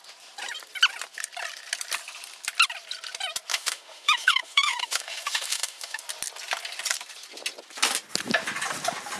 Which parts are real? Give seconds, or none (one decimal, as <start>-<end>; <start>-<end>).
0.0-3.5; 6.0-9.2